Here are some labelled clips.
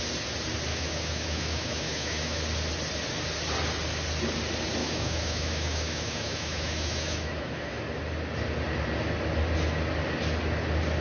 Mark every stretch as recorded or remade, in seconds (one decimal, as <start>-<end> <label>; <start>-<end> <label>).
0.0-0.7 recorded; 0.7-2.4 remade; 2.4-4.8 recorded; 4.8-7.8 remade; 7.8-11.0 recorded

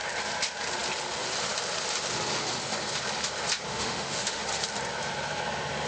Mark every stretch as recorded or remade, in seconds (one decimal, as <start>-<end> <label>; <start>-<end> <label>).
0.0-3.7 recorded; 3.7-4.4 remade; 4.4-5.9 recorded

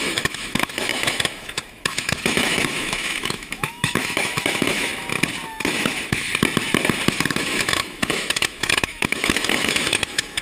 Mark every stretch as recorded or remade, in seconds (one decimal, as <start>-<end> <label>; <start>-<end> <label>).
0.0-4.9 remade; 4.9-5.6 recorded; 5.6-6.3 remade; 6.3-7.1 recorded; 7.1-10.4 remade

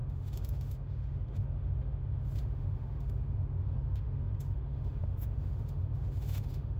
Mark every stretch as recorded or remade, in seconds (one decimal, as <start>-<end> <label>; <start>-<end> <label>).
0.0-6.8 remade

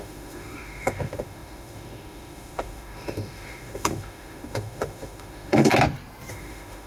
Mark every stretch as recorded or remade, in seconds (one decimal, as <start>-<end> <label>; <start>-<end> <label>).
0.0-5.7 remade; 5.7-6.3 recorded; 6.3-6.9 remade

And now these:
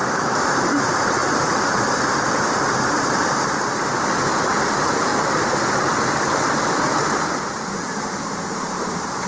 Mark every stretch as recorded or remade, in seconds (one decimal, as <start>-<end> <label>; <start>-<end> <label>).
0.0-0.7 remade; 0.7-9.3 recorded

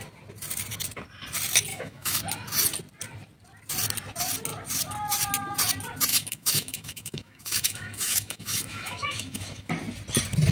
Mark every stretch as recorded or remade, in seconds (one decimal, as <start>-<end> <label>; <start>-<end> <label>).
0.0-1.7 recorded; 1.7-2.2 remade; 2.2-6.1 recorded; 6.1-9.7 remade; 9.7-10.5 recorded

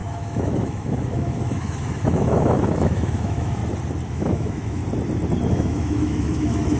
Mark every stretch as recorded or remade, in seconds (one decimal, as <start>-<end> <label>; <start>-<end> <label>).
0.0-3.6 remade; 3.6-4.1 recorded; 4.1-4.8 remade; 4.8-5.5 recorded; 5.5-6.8 remade